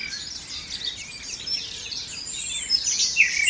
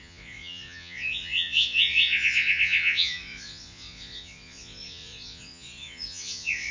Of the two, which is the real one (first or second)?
first